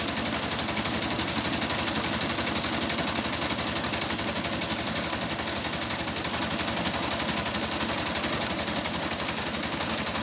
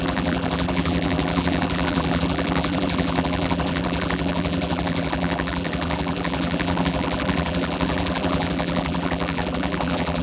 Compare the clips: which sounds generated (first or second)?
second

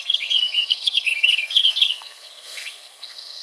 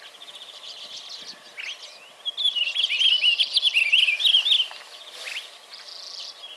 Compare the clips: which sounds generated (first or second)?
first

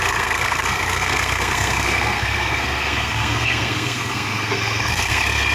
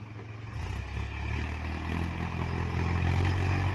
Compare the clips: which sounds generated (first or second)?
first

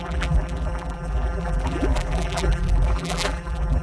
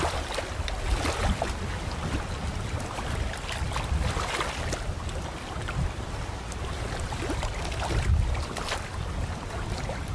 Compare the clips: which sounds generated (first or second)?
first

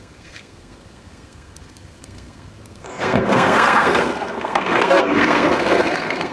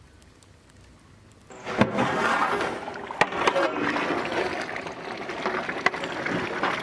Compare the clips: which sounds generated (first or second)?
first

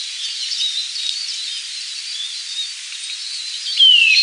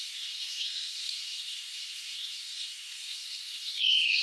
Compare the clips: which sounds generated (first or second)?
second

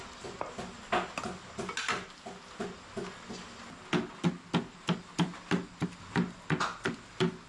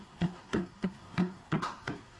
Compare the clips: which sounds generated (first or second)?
second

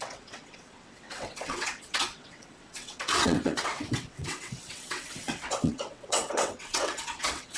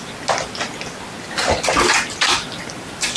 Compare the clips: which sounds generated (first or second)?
first